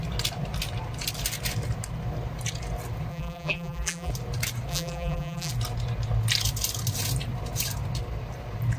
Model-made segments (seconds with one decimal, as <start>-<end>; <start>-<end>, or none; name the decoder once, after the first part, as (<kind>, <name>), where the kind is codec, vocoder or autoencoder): 3.1-4.1 (vocoder, BigVGAN v2); 4.7-5.5

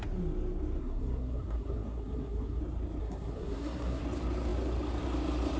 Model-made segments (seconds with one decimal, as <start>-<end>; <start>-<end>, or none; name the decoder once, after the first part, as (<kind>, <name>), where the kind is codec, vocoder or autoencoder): 0.8-2.6 (codec, SNAC); 3.0-4.0

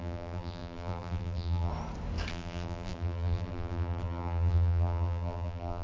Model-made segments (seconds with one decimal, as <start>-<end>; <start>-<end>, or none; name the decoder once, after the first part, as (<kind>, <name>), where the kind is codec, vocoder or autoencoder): 0.0-1.7 (vocoder, BigVGAN v2); 2.3-5.8

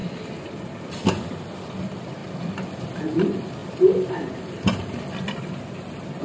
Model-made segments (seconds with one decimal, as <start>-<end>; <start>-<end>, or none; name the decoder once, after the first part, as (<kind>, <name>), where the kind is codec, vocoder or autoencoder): none

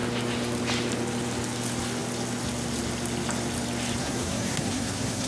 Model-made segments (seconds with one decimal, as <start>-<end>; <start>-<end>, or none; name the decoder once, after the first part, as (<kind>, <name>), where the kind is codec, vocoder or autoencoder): 4.0-5.3 (codec, SNAC)

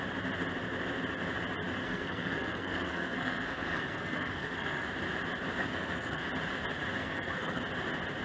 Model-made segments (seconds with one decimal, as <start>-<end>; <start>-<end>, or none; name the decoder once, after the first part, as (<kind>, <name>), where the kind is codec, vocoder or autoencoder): 1.8-4.9 (codec, SNAC); 5.6-6.2; 7.0-7.6

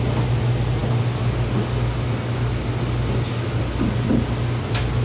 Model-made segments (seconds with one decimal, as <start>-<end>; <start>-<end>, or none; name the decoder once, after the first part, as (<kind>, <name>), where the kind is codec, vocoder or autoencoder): none